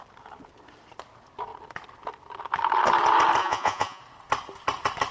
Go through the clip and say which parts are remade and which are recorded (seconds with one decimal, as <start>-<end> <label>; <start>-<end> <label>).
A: 0.0-3.4 recorded; 3.4-4.0 remade; 4.0-5.1 recorded